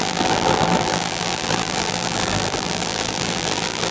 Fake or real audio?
fake